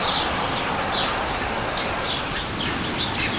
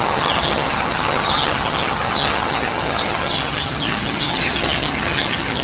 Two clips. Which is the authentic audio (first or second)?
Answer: first